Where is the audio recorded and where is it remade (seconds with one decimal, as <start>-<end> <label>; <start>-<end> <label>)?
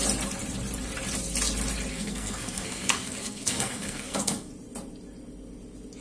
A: 0.0-1.9 recorded; 1.9-4.5 remade; 4.5-6.0 recorded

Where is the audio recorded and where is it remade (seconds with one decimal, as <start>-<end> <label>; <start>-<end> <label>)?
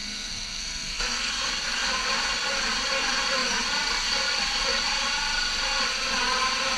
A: 0.0-1.3 remade; 1.3-6.8 recorded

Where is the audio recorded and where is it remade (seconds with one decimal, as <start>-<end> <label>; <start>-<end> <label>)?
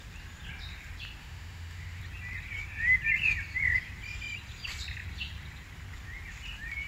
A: 0.0-1.2 recorded; 1.2-2.0 remade; 2.0-6.9 recorded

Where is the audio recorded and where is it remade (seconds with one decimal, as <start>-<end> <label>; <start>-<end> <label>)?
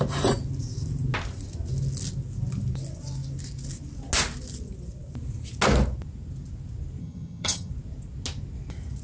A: 0.0-7.0 recorded; 7.0-7.7 remade; 7.7-9.0 recorded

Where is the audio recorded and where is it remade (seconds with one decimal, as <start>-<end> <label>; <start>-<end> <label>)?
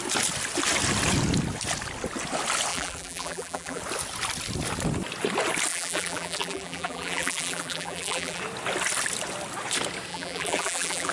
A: 0.0-2.7 recorded; 2.7-3.8 remade; 3.8-5.7 recorded; 5.7-8.4 remade; 8.4-10.1 recorded; 10.1-11.1 remade